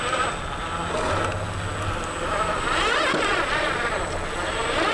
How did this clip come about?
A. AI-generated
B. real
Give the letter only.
B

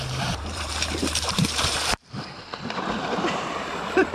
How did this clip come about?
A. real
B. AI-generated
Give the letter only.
B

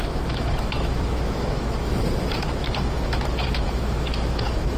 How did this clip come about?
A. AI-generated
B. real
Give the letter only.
A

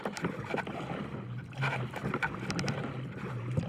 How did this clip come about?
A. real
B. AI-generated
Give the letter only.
A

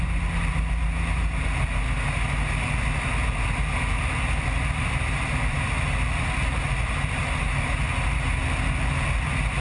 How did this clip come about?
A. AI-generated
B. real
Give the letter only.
B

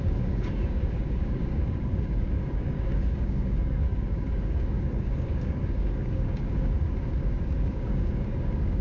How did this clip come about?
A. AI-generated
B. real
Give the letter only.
A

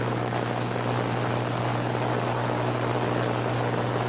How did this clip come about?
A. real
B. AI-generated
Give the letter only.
A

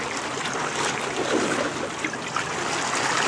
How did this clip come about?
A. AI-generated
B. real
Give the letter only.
B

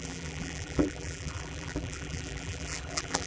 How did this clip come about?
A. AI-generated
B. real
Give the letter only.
A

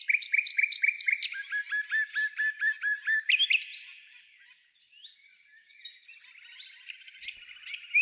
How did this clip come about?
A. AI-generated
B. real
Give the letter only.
B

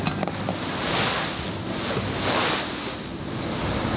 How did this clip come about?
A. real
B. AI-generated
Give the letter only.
A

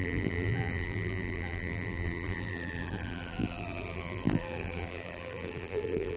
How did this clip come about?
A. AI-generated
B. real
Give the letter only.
A